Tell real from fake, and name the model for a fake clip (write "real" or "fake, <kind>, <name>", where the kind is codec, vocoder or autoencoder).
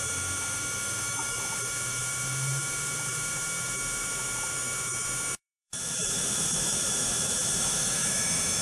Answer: fake, autoencoder, DAC-VAE